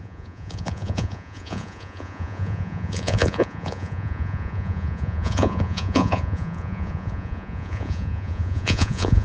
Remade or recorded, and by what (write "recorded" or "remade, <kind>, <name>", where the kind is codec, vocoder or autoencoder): remade, vocoder, Vocos